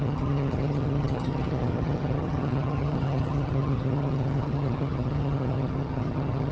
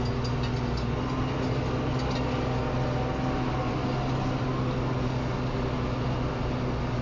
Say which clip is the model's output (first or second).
first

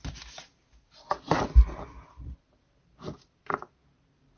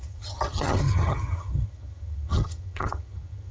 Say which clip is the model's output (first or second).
second